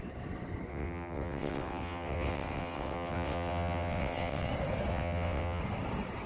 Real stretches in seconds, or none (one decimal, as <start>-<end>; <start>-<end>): 0.0-0.7; 4.5-4.9; 5.6-6.3